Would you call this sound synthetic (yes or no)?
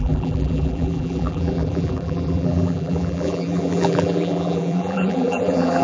yes